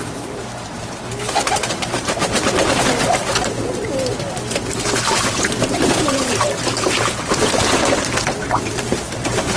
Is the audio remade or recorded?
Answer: remade